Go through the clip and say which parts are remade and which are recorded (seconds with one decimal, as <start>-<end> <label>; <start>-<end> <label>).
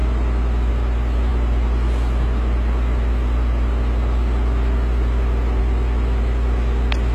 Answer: 0.0-7.1 recorded